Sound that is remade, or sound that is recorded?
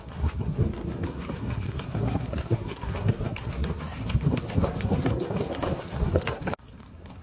remade